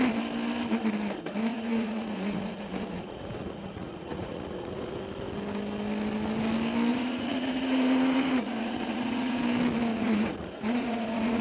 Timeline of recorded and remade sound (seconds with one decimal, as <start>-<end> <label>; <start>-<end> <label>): 0.0-1.5 recorded; 1.5-5.0 remade; 5.0-6.9 recorded; 6.9-9.4 remade; 9.4-9.9 recorded; 9.9-11.4 remade